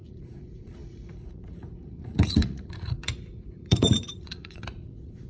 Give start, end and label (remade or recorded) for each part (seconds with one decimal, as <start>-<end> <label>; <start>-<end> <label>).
0.0-5.3 remade